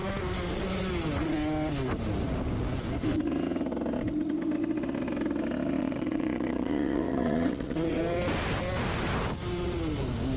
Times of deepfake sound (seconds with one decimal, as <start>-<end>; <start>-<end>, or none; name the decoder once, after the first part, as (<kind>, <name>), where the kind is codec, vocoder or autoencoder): 5.8-8.0 (vocoder, WaveNeXt)